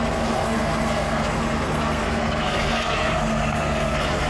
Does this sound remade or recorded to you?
remade